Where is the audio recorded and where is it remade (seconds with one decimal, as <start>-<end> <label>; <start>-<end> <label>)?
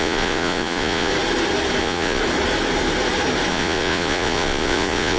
0.0-1.1 remade; 1.1-1.8 recorded; 1.8-2.2 remade; 2.2-3.5 recorded; 3.5-5.2 remade